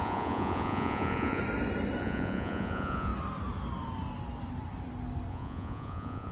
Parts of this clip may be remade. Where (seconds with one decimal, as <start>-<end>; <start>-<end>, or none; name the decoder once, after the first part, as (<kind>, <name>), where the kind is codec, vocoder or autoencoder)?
0.0-1.4 (vocoder, Vocos); 2.0-3.1; 5.3-6.3